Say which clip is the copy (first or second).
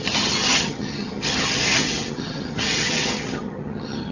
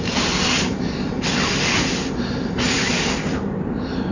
first